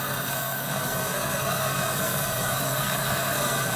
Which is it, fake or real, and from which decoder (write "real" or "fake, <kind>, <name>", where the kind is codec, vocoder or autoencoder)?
fake, codec, SNAC